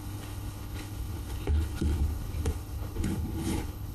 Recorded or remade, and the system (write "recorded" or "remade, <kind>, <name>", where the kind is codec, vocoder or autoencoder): remade, codec, HILCodec